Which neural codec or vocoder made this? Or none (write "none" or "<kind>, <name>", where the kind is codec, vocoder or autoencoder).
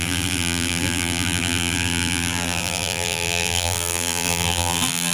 vocoder, BigVGAN v2